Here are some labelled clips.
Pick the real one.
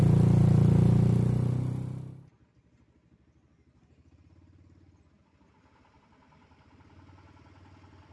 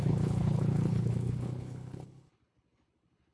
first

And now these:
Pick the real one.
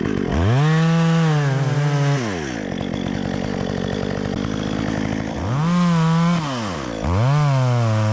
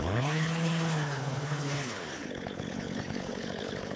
first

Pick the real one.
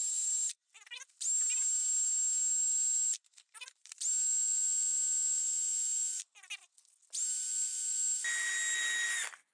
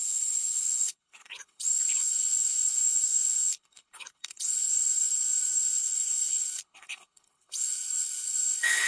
first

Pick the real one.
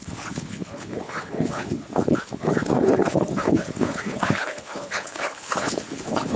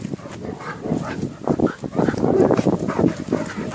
second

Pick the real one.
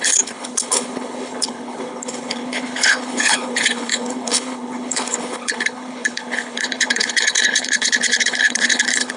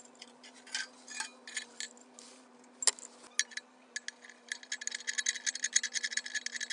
second